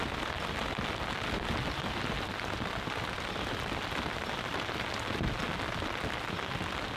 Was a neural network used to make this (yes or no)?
no